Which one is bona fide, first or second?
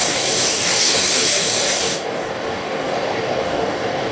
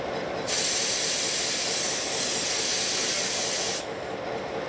second